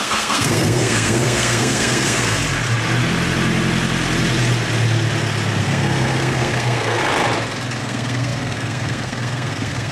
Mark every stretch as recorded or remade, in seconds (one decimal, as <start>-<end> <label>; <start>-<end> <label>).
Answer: 0.0-2.4 remade; 2.4-5.6 recorded; 5.6-7.0 remade; 7.0-7.8 recorded; 7.8-9.9 remade